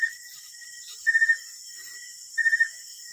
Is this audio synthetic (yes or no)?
yes